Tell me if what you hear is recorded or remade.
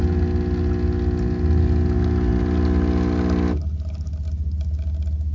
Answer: recorded